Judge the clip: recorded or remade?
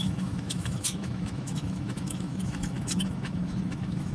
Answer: remade